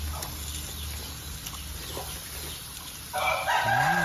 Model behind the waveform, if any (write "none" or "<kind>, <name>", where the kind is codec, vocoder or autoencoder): none